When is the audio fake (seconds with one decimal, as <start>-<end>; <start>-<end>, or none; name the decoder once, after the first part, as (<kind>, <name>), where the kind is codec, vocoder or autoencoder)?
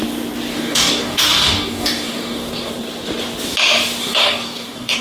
0.5-2.7 (codec, DAC); 4.0-5.0